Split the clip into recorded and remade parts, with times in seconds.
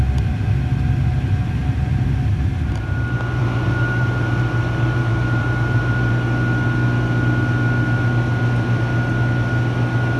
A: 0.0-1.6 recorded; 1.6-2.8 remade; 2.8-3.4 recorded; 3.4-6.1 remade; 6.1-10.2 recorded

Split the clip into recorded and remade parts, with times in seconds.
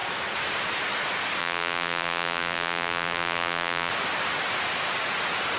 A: 0.0-1.4 recorded; 1.4-3.9 remade; 3.9-5.6 recorded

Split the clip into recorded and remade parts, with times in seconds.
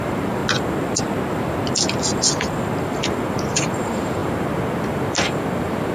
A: 0.0-0.4 remade; 0.4-2.8 recorded; 2.8-5.9 remade